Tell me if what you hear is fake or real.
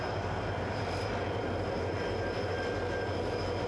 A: real